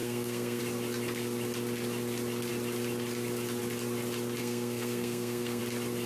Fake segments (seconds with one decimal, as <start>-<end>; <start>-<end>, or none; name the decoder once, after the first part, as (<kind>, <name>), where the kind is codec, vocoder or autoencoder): 0.0-0.6 (codec, SNAC); 4.4-5.6